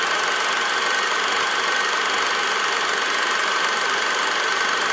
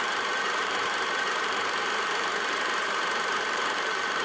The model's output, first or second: second